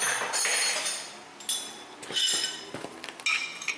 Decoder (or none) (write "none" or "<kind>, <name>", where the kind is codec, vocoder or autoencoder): none